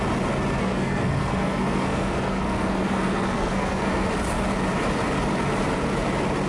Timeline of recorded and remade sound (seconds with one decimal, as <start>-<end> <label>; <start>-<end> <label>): 0.0-0.6 recorded; 0.6-4.1 remade; 4.1-6.5 recorded